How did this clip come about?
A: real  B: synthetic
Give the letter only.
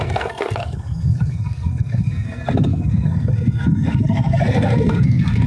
B